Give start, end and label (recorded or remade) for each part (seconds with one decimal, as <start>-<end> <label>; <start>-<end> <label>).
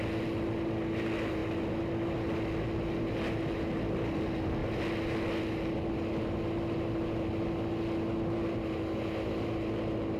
0.0-10.2 recorded